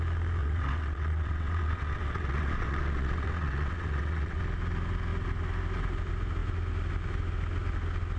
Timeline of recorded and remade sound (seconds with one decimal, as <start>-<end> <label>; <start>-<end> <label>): 0.0-0.4 recorded; 0.4-4.4 remade; 4.4-8.2 recorded